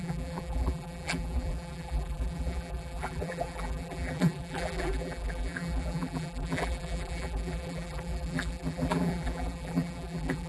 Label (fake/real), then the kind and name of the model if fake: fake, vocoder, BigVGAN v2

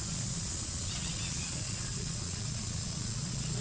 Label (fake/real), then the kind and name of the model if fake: fake, vocoder, Vocos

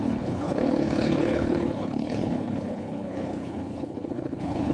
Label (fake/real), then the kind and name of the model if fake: fake, codec, HILCodec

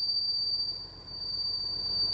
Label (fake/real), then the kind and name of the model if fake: fake, vocoder, BigVGAN v2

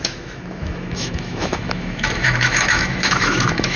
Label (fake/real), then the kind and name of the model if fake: fake, autoencoder, DAC-VAE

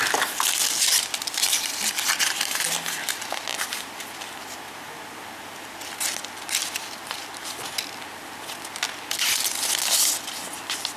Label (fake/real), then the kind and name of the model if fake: real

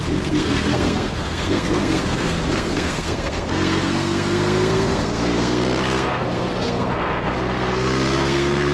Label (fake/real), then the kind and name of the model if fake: fake, codec, SNAC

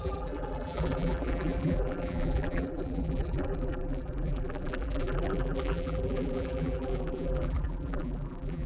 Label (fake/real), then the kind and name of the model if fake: fake, vocoder, BigVGAN v2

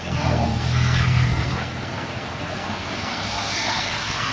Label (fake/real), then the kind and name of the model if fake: fake, codec, SNAC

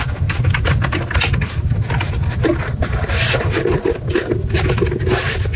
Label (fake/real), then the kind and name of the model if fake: real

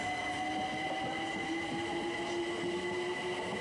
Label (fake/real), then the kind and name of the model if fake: real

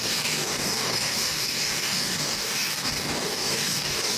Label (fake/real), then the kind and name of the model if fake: fake, codec, DAC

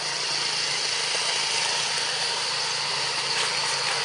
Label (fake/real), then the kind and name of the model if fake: real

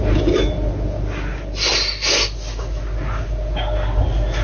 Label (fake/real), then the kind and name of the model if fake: real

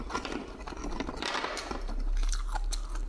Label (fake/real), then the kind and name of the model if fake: real